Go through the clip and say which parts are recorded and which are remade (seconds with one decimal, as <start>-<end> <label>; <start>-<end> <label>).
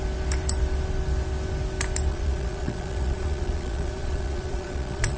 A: 0.0-2.1 recorded; 2.1-5.2 remade